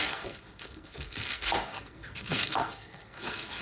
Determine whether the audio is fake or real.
fake